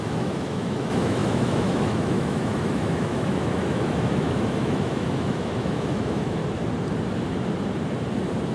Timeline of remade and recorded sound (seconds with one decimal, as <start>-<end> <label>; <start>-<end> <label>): 0.0-6.4 remade; 6.4-8.5 recorded